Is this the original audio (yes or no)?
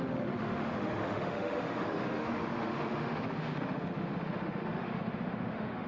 no